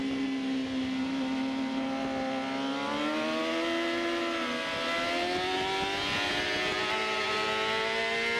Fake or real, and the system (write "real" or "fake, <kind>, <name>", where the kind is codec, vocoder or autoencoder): real